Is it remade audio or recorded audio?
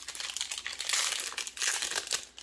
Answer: recorded